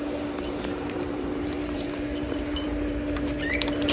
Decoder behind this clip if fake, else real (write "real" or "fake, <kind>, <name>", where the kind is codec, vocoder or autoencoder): fake, vocoder, BigVGAN v2